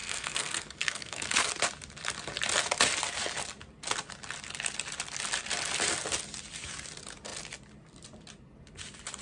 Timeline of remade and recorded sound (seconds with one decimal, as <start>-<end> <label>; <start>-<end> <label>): 0.0-1.5 remade; 1.5-9.2 recorded